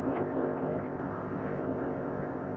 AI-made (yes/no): yes